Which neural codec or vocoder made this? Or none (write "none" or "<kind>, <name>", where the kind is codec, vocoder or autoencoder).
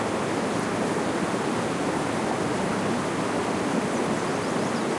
none